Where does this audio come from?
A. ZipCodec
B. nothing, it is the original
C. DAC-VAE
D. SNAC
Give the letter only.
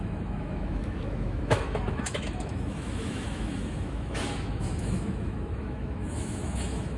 C